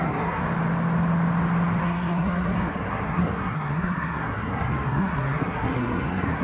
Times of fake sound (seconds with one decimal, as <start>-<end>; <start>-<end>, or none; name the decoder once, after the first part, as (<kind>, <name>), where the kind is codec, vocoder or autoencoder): 0.0-0.4 (codec, SNAC); 1.8-6.4